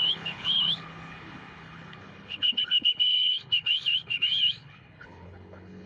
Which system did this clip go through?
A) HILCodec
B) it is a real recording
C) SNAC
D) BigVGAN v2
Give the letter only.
A